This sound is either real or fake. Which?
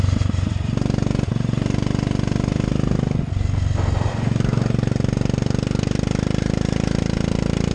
real